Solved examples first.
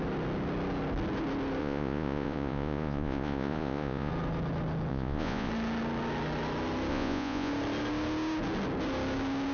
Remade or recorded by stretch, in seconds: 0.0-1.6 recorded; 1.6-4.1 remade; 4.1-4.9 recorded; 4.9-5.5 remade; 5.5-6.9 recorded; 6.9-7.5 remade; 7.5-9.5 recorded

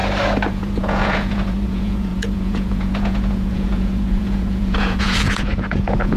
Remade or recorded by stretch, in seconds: 0.0-0.5 recorded; 0.5-6.2 remade

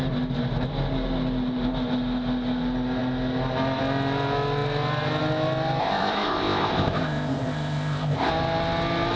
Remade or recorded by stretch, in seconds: 0.0-5.8 recorded; 5.8-8.3 remade; 8.3-9.2 recorded

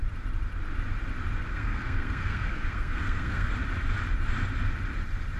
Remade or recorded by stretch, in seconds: 0.0-1.5 recorded; 1.5-3.5 remade; 3.5-5.4 recorded

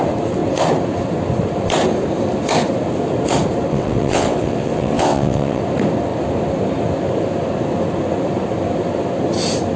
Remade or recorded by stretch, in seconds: 0.0-3.7 recorded; 3.7-5.6 remade; 5.6-9.8 recorded

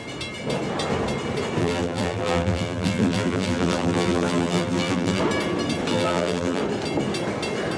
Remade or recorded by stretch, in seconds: 0.0-1.6 recorded; 1.6-5.2 remade; 5.2-5.9 recorded; 5.9-6.6 remade; 6.6-7.8 recorded

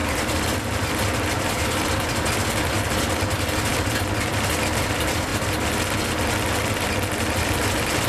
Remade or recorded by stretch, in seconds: 0.0-5.3 remade; 5.3-6.6 recorded; 6.6-8.1 remade